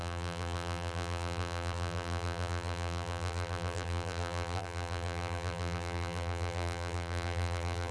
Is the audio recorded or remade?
remade